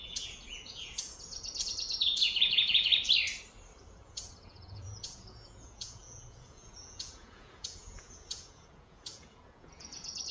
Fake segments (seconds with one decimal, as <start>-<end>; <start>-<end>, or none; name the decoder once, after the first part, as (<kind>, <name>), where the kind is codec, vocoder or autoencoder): 0.0-2.9 (vocoder, Vocos); 3.9-10.3